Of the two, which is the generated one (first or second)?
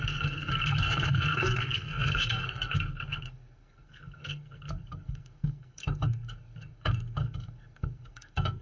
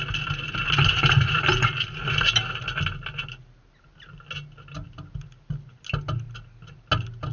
first